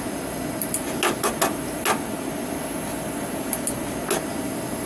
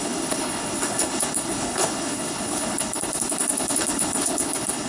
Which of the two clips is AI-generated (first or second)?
second